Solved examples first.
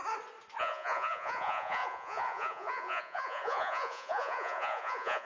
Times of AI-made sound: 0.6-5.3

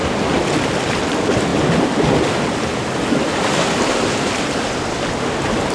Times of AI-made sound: none

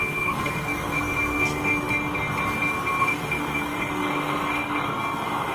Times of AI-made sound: 0.0-1.7; 3.0-5.5

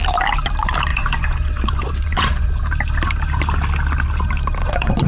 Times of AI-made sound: 0.9-2.6; 4.6-5.1

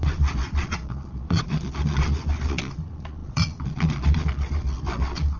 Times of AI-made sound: 0.0-5.4

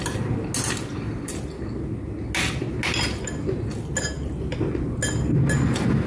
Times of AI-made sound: none

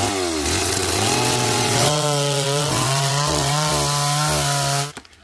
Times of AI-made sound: 0.6-3.7

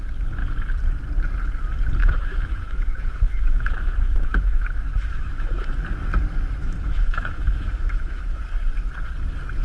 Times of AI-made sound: 2.0-5.7; 6.6-8.4